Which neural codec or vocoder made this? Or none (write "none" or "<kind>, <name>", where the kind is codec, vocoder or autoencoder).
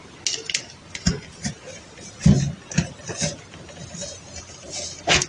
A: none